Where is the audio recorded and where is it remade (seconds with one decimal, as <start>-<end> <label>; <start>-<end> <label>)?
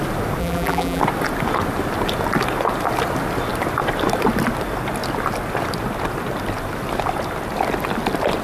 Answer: 0.0-0.4 recorded; 0.4-1.0 remade; 1.0-8.4 recorded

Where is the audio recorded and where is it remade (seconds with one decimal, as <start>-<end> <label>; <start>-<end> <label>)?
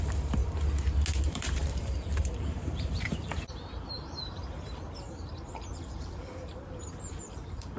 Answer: 0.0-0.4 remade; 0.4-1.2 recorded; 1.2-7.8 remade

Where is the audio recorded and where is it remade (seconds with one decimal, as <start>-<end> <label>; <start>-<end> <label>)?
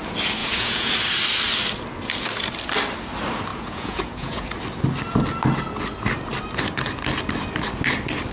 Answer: 0.0-0.4 recorded; 0.4-0.9 remade; 0.9-3.5 recorded; 3.5-4.5 remade; 4.5-8.3 recorded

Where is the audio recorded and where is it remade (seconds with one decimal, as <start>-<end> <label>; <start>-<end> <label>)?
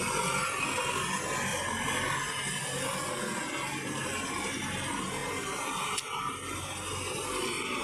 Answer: 0.0-7.8 recorded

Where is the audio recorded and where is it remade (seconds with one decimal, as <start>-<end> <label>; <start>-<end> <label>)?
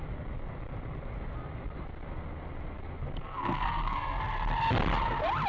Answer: 0.0-3.2 recorded; 3.2-4.2 remade; 4.2-5.5 recorded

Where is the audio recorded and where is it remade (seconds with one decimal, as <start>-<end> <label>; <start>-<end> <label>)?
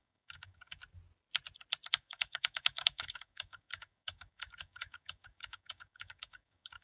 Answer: 0.0-0.8 remade; 0.8-1.9 recorded; 1.9-6.8 remade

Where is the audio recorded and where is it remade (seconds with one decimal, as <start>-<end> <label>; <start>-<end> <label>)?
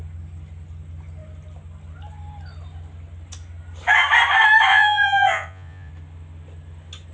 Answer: 0.0-4.7 recorded; 4.7-5.9 remade; 5.9-7.1 recorded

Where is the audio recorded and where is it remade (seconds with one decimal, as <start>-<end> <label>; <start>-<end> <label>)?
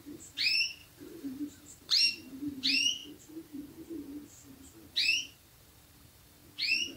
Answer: 0.0-3.0 remade; 3.0-4.9 recorded; 4.9-6.4 remade; 6.4-7.0 recorded